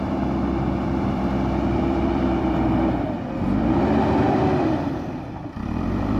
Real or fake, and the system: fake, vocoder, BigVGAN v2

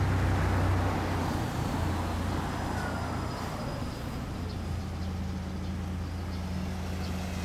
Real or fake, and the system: real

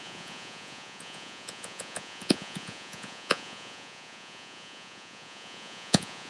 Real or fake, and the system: fake, vocoder, Vocos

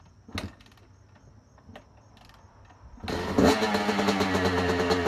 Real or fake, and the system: real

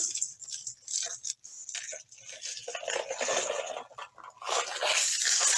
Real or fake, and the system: real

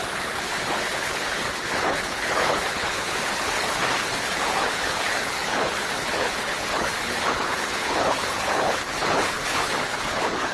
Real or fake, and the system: fake, codec, HILCodec